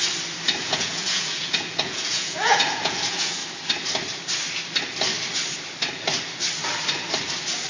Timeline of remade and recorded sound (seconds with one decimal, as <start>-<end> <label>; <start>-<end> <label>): 0.0-0.6 recorded; 0.6-3.4 remade; 3.4-7.7 recorded